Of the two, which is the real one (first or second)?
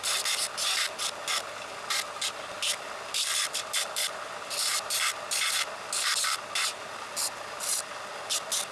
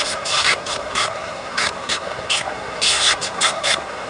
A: first